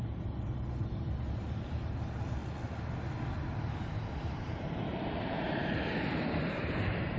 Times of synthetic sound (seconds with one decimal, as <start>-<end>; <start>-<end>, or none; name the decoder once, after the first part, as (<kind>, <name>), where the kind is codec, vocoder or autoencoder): 0.0-2.4 (vocoder, BigVGAN v2); 3.8-7.2

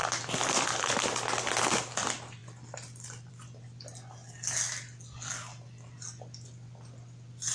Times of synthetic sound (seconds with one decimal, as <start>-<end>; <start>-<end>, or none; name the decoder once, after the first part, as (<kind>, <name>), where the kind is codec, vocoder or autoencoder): none

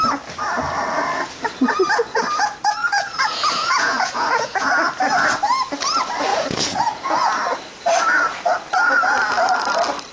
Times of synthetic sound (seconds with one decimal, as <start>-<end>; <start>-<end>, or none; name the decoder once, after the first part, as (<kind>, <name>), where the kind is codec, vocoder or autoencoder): 2.8-4.7 (vocoder, Vocos); 6.3-7.4